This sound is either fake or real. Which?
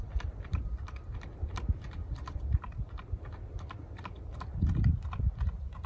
fake